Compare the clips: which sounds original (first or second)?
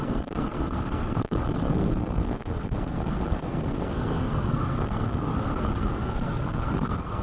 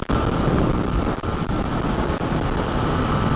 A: second